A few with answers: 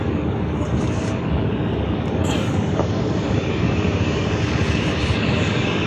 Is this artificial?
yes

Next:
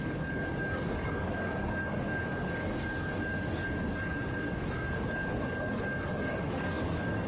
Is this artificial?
yes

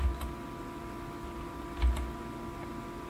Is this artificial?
no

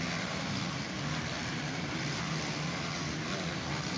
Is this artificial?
no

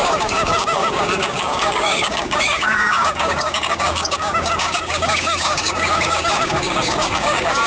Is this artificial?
yes